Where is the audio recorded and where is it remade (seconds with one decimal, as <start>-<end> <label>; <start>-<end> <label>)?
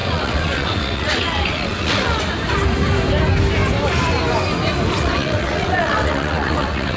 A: 0.0-2.2 remade; 2.2-5.0 recorded; 5.0-7.0 remade